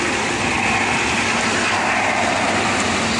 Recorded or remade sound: recorded